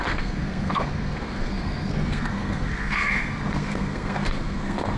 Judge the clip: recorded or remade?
remade